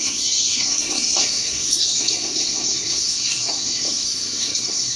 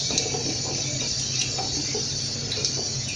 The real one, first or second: second